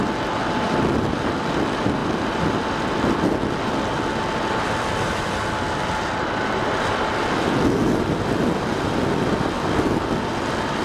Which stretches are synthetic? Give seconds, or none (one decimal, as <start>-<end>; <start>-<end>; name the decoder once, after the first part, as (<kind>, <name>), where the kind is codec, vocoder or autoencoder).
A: 0.4-1.3 (vocoder, BigVGAN v2); 2.0-3.1